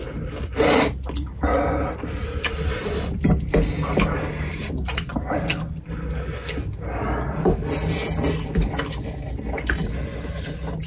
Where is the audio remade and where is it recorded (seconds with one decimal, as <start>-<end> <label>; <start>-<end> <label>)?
0.0-10.9 recorded